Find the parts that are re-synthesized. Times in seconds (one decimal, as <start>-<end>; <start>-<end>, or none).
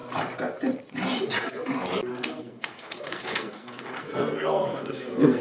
2.1-5.4